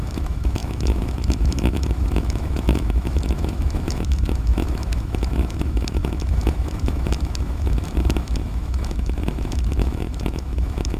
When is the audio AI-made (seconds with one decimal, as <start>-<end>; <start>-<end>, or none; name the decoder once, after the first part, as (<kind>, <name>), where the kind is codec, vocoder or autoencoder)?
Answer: 0.0-11.0 (autoencoder, DAC-VAE)